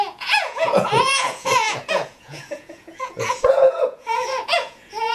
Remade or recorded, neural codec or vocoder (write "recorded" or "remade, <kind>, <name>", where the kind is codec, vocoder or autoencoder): remade, vocoder, Vocos